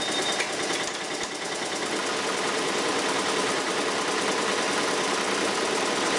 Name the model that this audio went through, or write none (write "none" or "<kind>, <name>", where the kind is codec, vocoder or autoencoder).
none